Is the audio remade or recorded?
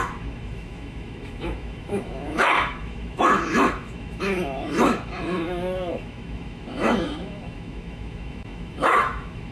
remade